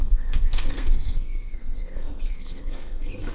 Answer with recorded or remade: remade